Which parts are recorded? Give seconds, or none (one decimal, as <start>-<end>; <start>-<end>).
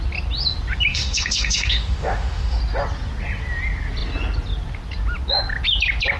0.0-0.9; 2.6-6.2